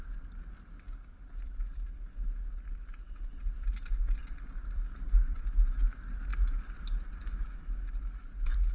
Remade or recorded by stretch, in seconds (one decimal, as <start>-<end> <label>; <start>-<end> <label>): 0.0-8.7 recorded